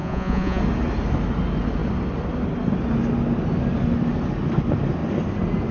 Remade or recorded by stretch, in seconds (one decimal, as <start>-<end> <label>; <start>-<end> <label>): 0.0-0.6 remade; 0.6-5.7 recorded